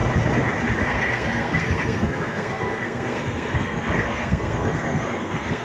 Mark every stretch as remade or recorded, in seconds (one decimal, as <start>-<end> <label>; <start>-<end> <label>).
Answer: 0.0-0.8 recorded; 0.8-5.6 remade